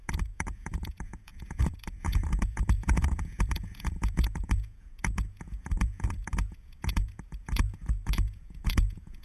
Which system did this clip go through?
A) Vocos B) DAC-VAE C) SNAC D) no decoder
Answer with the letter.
A